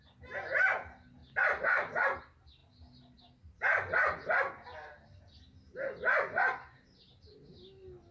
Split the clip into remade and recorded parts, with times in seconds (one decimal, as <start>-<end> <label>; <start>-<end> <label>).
0.0-8.1 recorded